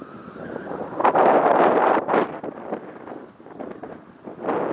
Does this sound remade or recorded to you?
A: remade